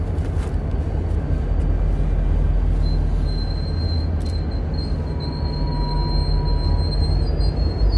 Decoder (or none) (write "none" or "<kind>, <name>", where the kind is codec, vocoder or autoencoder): none